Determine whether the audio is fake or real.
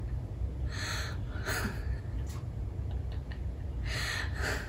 real